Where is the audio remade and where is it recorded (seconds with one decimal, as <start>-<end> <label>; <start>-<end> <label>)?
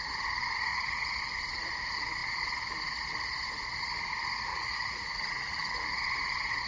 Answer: 0.0-0.7 recorded; 0.7-1.2 remade; 1.2-4.5 recorded; 4.5-6.0 remade; 6.0-6.7 recorded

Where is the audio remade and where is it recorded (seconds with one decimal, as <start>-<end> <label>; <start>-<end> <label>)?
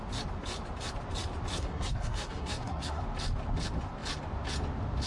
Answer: 0.0-1.5 recorded; 1.5-3.0 remade; 3.0-5.1 recorded